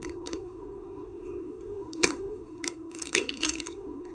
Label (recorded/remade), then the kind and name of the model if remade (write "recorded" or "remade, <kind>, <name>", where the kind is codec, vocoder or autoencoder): remade, codec, SNAC